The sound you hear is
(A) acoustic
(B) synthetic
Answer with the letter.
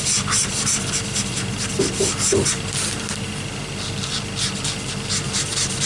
A